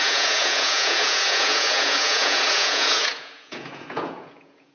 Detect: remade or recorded remade